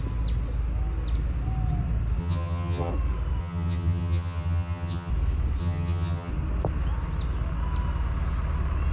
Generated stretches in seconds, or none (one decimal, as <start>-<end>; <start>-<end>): 2.2-2.9; 3.4-5.1; 5.6-6.3